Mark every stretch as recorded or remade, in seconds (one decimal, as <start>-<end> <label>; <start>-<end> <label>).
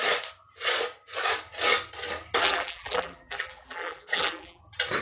0.0-2.4 recorded; 2.4-4.6 remade; 4.6-5.0 recorded